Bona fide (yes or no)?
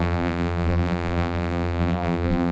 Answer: no